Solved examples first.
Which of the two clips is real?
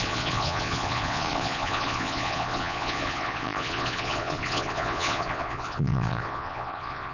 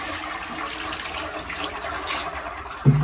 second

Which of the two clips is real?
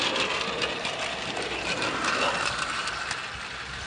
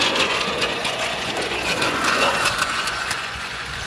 first